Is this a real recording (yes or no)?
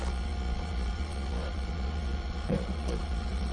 no